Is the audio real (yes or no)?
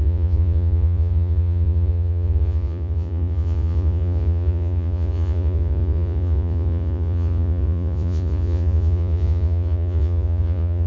no